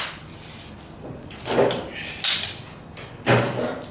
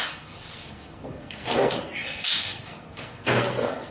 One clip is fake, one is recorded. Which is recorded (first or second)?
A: first